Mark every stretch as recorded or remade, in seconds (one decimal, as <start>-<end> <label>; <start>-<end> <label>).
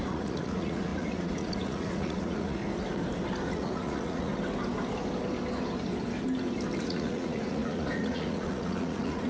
0.0-2.6 remade; 2.6-3.5 recorded; 3.5-4.3 remade; 4.3-6.8 recorded; 6.8-9.3 remade